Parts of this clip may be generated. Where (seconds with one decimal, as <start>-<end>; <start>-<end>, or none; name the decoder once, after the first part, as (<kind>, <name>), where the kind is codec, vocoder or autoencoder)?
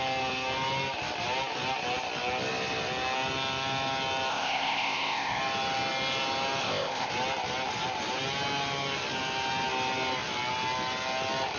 4.3-5.4 (codec, ZipCodec); 6.6-7.1